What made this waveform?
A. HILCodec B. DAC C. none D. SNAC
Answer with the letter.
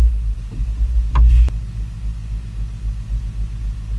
C